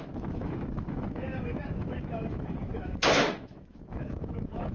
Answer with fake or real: fake